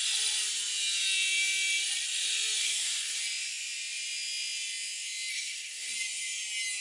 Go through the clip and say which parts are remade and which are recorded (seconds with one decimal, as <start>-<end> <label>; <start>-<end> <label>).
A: 0.0-2.6 recorded; 2.6-3.2 remade; 3.2-5.3 recorded; 5.3-5.9 remade; 5.9-6.8 recorded